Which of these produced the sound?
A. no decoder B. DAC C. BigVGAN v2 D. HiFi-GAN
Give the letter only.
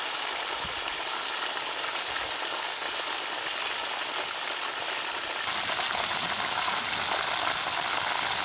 A